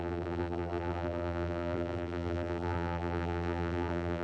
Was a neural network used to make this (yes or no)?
yes